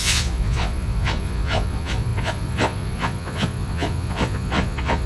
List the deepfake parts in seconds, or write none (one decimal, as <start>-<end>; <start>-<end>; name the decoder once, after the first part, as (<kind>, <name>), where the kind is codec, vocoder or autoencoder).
0.0-5.1 (vocoder, Vocos)